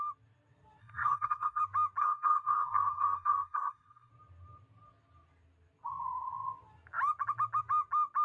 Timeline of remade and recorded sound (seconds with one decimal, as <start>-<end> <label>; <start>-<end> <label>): 0.0-0.8 recorded; 0.8-1.6 remade; 1.6-2.0 recorded; 2.0-4.1 remade; 4.1-8.2 recorded